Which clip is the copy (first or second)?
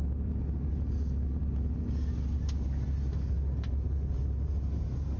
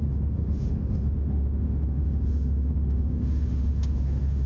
second